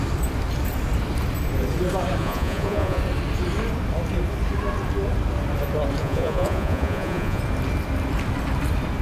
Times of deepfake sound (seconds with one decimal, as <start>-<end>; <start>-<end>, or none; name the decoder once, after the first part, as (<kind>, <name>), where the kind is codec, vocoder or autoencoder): 2.2-3.0 (vocoder, Vocos); 6.0-7.4